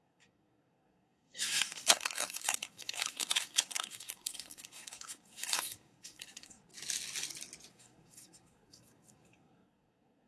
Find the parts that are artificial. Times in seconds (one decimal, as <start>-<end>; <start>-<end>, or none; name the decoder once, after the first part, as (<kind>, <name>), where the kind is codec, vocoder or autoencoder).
0.0-6.7 (codec, SNAC); 7.7-10.3